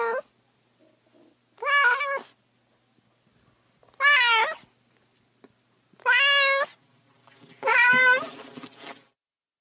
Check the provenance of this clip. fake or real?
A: real